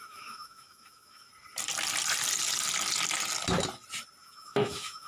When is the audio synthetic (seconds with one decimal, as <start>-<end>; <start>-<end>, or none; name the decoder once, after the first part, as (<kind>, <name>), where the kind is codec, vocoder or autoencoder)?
0.0-1.3 (autoencoder, DAC-VAE); 4.2-5.1

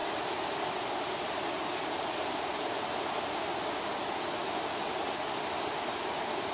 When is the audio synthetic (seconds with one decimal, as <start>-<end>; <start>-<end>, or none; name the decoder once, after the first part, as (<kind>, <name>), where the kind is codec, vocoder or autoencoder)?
none

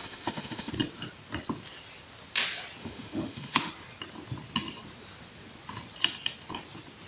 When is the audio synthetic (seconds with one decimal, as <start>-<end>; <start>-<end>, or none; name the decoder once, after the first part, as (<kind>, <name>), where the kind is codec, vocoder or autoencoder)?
0.0-0.7 (autoencoder, DAC-VAE); 2.8-3.7

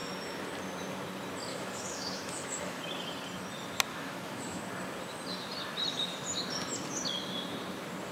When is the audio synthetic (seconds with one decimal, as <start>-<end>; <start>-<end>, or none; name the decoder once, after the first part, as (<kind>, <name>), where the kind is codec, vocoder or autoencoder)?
1.5-2.8 (autoencoder, DAC-VAE); 3.9-4.6

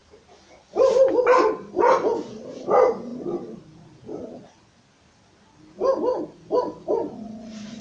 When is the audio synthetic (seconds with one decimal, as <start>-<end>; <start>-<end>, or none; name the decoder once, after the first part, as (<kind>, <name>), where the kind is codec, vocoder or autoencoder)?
none